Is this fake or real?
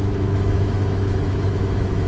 fake